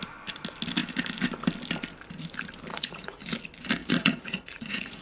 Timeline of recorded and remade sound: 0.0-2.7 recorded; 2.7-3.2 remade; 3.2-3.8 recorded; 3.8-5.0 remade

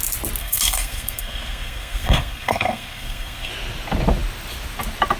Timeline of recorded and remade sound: 0.0-0.4 recorded; 0.4-3.5 remade; 3.5-5.2 recorded

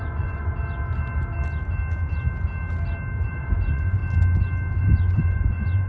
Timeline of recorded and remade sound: 0.0-0.5 remade; 0.5-3.3 recorded; 3.3-4.0 remade; 4.0-4.8 recorded; 4.8-5.9 remade